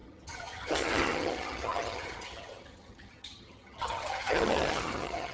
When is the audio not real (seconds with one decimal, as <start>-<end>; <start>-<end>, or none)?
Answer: 0.0-5.3